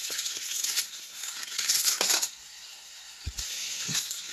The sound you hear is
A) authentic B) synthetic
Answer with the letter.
B